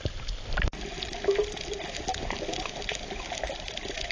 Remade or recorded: recorded